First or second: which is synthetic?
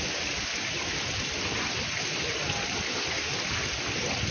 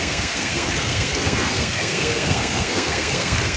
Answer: second